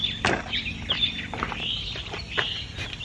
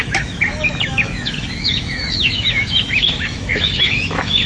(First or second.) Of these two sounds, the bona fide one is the first